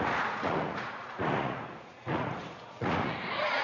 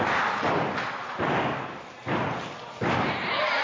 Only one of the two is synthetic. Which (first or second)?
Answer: first